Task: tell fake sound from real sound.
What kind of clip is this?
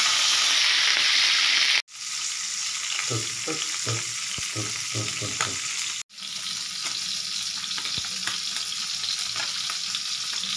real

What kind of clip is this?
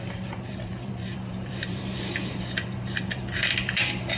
fake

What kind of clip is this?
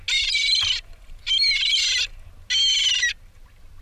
real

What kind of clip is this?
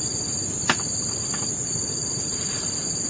real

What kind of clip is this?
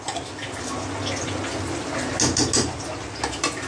real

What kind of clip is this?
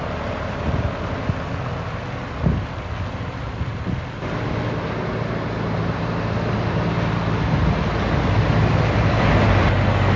real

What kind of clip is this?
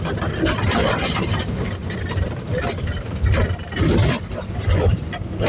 fake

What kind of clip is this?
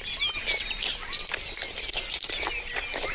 real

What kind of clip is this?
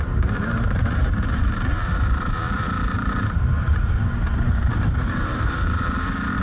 fake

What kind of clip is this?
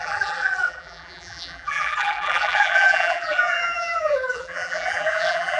fake